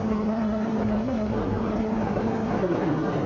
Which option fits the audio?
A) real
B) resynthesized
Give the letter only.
B